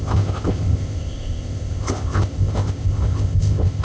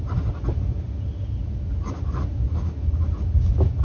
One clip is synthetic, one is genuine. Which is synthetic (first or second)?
first